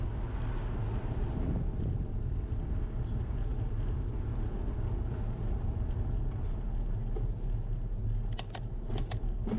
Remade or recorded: recorded